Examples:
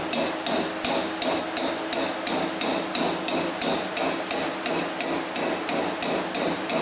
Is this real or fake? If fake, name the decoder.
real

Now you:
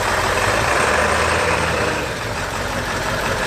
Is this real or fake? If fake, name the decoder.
fake, vocoder, BigVGAN v2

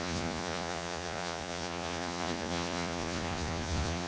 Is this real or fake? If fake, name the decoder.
fake, vocoder, Vocos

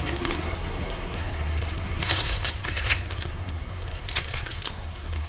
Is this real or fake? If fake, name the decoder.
fake, codec, SNAC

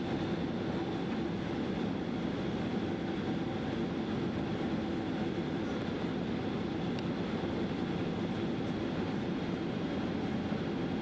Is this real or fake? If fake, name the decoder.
real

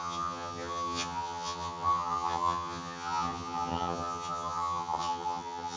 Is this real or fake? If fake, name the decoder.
fake, vocoder, HiFi-GAN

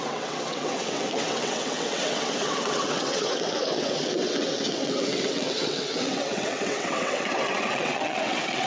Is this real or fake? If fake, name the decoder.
fake, vocoder, WaveNeXt